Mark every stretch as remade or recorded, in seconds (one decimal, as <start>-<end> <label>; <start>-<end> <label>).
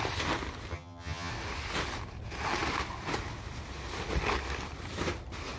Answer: 0.0-0.7 recorded; 0.7-1.3 remade; 1.3-5.6 recorded